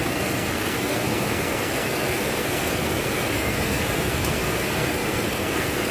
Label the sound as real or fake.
fake